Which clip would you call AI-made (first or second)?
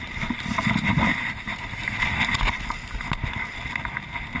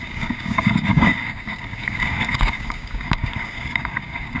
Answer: second